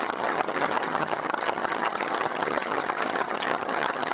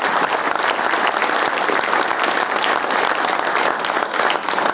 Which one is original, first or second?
second